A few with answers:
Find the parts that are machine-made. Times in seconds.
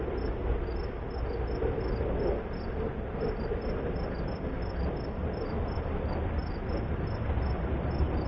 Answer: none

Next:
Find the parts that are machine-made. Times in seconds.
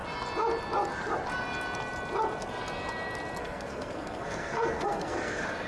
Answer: 3.4-5.7 (codec, SNAC)